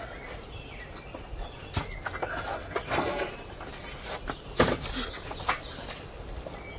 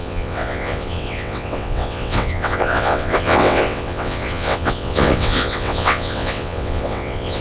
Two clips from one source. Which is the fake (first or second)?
second